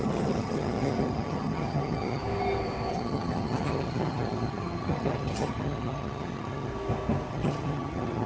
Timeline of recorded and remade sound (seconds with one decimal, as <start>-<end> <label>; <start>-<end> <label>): 0.0-2.2 remade; 2.2-2.9 recorded; 2.9-6.7 remade; 6.7-7.3 recorded; 7.3-8.3 remade